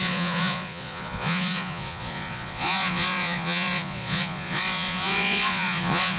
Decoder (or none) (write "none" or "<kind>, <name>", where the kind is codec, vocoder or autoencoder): vocoder, Vocos